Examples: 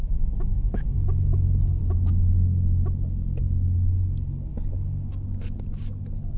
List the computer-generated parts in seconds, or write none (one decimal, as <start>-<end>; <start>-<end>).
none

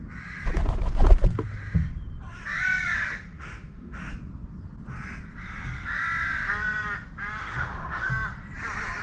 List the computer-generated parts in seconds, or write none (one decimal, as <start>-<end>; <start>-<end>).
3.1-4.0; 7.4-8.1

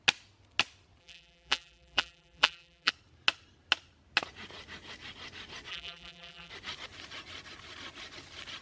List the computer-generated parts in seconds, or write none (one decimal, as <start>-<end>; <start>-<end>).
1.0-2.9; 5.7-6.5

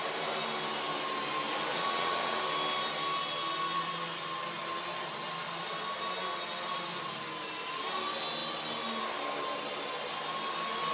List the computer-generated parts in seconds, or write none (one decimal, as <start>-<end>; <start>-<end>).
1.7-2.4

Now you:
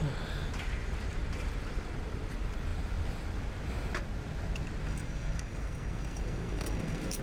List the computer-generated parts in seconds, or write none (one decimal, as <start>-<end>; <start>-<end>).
4.9-7.2

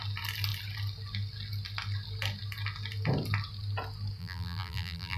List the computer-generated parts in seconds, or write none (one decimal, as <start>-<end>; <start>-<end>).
4.2-5.2